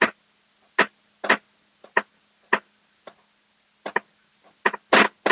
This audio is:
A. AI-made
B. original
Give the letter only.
B